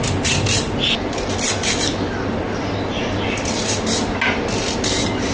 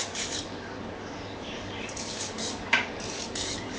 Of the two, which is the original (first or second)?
first